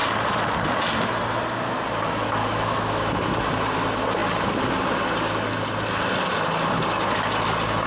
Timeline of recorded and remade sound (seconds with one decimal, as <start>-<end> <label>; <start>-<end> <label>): 0.0-2.4 recorded; 2.4-3.1 remade; 3.1-7.9 recorded